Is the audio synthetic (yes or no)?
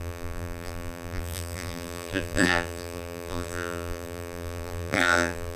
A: yes